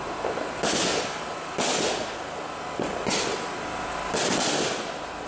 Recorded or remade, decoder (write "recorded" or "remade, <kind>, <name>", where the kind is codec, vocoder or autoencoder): recorded